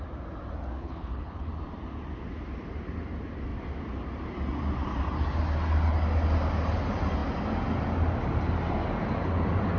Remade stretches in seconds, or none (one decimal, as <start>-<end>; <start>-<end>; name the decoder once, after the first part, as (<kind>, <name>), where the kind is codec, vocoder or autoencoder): 0.8-1.5 (codec, HILCodec)